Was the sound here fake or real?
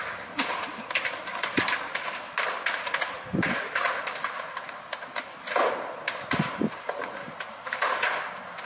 real